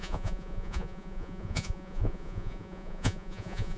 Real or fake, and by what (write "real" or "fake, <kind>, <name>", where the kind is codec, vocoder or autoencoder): fake, vocoder, Vocos